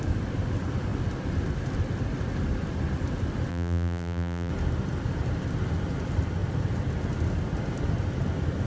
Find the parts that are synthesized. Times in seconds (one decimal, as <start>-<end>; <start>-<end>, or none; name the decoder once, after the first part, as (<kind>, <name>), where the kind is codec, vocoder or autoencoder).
3.5-4.5 (vocoder, BigVGAN v2)